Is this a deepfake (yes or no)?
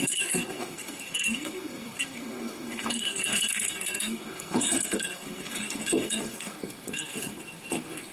yes